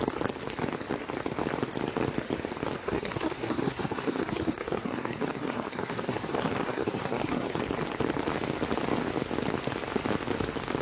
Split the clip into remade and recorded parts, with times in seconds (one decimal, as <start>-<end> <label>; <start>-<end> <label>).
0.0-2.8 recorded; 2.8-7.6 remade; 7.6-10.8 recorded